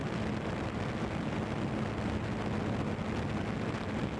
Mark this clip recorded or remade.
recorded